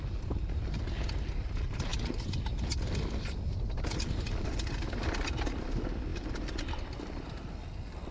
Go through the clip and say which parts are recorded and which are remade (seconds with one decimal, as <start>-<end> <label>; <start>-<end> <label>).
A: 0.0-8.1 recorded